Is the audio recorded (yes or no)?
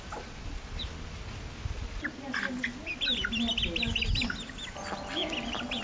yes